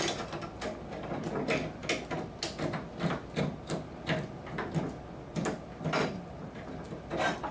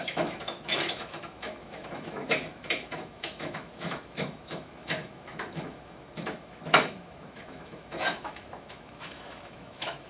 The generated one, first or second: second